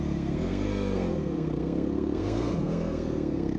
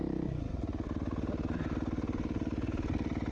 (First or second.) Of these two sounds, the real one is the second